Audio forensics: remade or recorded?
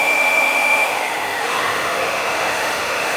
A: remade